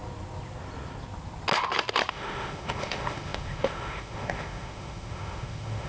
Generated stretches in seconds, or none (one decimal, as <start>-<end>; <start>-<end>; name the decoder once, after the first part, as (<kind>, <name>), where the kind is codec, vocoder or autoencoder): 2.1-5.9 (autoencoder, DAC-VAE)